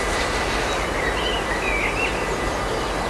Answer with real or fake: real